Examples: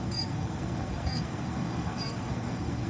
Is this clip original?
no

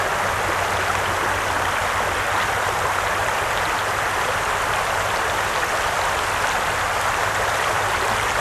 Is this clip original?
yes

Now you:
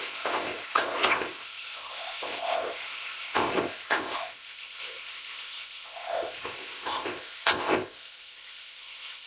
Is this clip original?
no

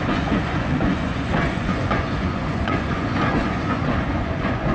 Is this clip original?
no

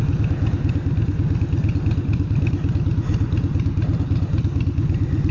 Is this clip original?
yes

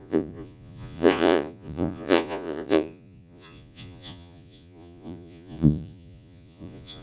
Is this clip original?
no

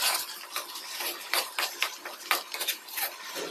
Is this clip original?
no